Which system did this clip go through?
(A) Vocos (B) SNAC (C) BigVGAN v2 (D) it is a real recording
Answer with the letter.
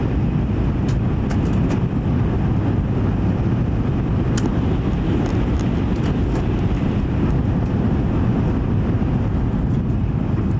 D